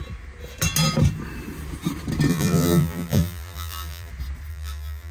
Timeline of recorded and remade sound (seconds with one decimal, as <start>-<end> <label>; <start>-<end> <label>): 0.0-2.3 recorded; 2.3-4.1 remade; 4.1-4.5 recorded; 4.5-5.1 remade